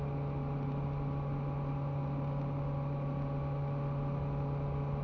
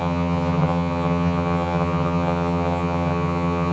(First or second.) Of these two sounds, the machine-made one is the second